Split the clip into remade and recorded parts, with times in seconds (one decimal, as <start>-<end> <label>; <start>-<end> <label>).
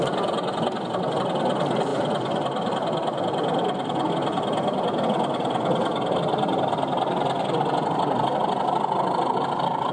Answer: 0.0-9.9 recorded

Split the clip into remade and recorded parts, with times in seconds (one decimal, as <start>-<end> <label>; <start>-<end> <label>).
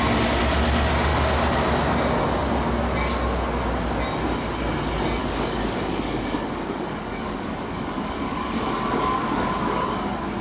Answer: 0.0-5.2 recorded; 5.2-10.4 remade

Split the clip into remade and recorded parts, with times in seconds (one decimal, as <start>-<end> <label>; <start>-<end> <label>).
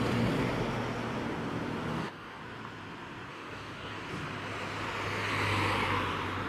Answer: 0.0-1.9 recorded; 1.9-2.4 remade; 2.4-3.3 recorded; 3.3-4.0 remade; 4.0-6.5 recorded